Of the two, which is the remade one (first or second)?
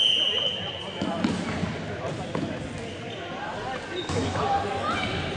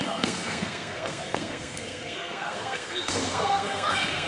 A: second